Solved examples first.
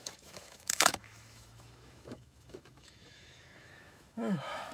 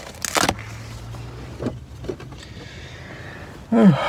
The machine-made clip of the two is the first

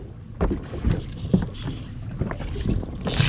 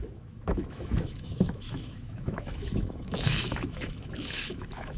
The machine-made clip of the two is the second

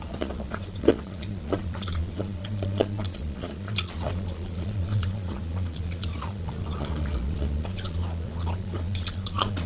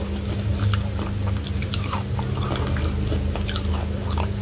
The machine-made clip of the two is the first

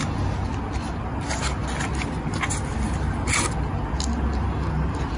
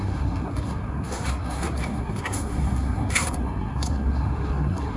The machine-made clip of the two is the second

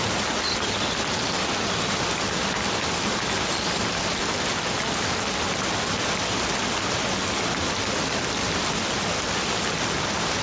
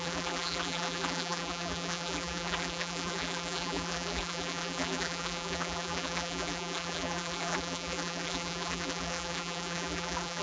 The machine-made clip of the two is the second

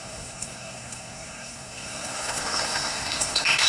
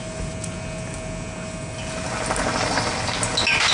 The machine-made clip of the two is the first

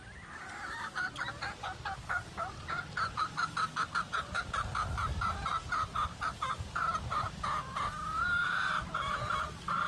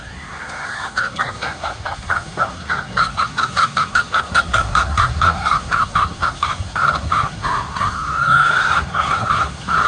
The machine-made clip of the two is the second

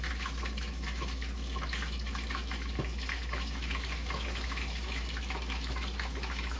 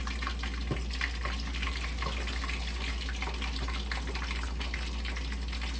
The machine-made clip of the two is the first